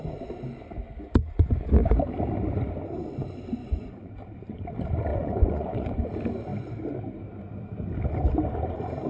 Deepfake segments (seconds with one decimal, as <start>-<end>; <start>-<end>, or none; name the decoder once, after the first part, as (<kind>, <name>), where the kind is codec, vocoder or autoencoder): 3.6-4.1 (vocoder, Vocos); 5.1-6.1